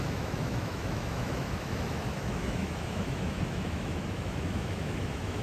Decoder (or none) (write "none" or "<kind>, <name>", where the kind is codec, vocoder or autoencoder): autoencoder, DAC-VAE